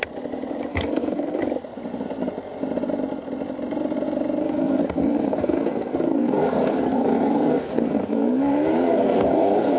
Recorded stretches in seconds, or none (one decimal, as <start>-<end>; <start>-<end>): 0.0-0.7; 1.4-4.4